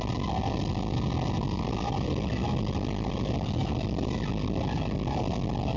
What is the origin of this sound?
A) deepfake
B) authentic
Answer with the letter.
B